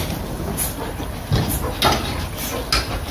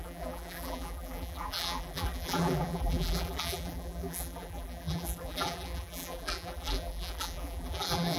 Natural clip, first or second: first